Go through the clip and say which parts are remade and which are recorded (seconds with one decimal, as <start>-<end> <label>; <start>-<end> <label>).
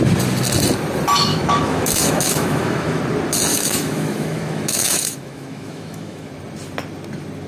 0.0-1.3 recorded; 1.3-3.0 remade; 3.0-3.5 recorded; 3.5-6.3 remade; 6.3-7.5 recorded